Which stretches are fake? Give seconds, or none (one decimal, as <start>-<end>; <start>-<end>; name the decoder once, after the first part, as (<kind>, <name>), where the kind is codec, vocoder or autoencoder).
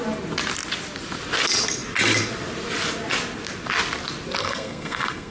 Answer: 4.4-5.3 (codec, SNAC)